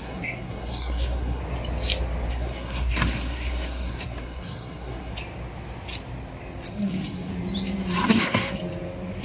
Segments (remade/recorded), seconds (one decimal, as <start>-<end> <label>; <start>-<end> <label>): 0.0-1.4 remade; 1.4-2.3 recorded; 2.3-5.1 remade; 5.1-6.7 recorded; 6.7-7.3 remade; 7.3-8.1 recorded; 8.1-8.6 remade; 8.6-9.2 recorded